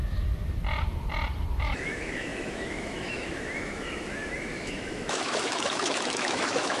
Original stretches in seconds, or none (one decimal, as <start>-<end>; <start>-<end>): 0.0-1.6